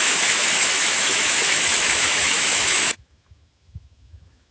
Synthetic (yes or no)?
yes